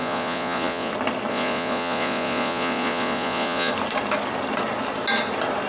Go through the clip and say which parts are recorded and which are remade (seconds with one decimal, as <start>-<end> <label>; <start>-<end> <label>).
0.0-0.9 remade; 0.9-1.3 recorded; 1.3-3.7 remade; 3.7-5.7 recorded